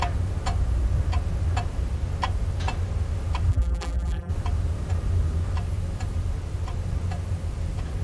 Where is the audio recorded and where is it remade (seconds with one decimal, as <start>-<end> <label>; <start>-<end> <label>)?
0.0-3.5 recorded; 3.5-4.3 remade; 4.3-8.0 recorded